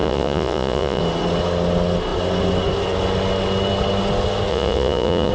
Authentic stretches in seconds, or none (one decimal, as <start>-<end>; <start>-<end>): 1.0-4.5